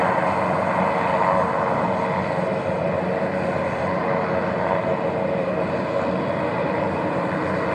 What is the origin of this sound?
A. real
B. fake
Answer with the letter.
A